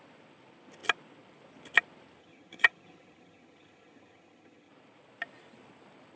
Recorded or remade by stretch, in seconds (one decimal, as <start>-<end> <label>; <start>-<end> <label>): 0.0-2.2 recorded; 2.2-4.7 remade; 4.7-6.2 recorded